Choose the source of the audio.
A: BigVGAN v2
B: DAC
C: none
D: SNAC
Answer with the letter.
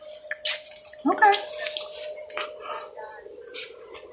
C